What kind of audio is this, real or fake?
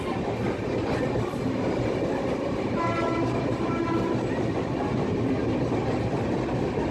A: real